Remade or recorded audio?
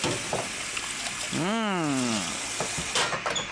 recorded